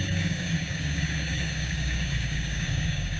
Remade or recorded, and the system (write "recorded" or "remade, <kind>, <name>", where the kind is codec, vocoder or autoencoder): remade, codec, DAC